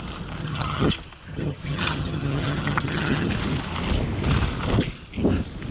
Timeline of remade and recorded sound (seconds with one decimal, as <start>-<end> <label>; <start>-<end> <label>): 0.0-0.4 recorded; 0.4-0.9 remade; 0.9-1.3 recorded; 1.3-3.3 remade; 3.3-5.7 recorded